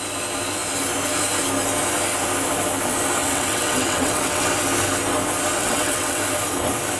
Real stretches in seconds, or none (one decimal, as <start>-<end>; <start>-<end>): 0.0-3.2; 4.5-5.6; 6.2-7.0